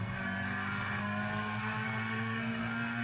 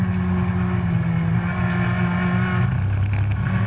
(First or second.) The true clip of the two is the second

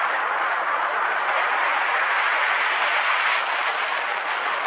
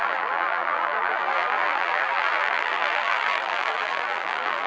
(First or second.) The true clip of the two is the first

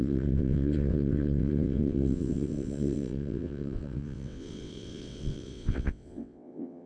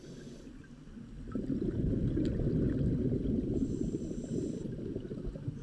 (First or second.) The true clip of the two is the second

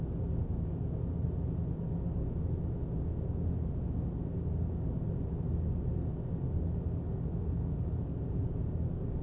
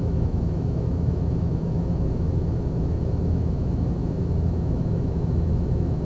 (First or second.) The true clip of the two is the first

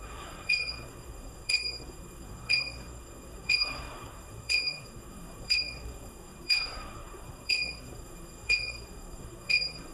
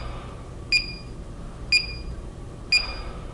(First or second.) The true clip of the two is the second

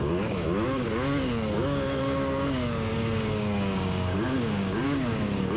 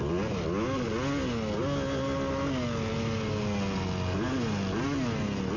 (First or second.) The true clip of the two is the second